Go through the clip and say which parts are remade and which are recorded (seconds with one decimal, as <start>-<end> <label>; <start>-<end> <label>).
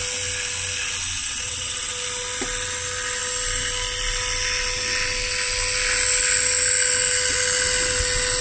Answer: 0.0-1.2 recorded; 1.2-1.9 remade; 1.9-8.4 recorded